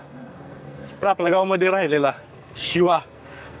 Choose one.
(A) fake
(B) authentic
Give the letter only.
A